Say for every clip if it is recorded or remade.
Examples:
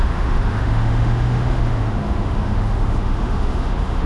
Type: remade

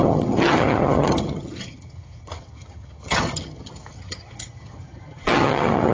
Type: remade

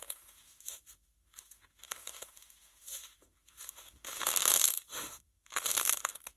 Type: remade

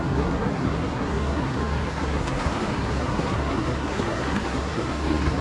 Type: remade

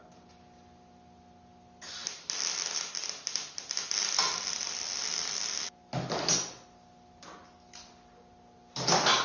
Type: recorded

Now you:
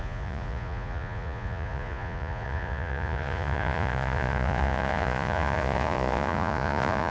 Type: remade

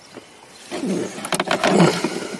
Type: recorded